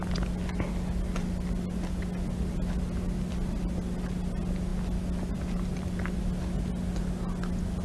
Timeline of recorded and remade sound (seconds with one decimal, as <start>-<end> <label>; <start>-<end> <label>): 0.0-7.8 recorded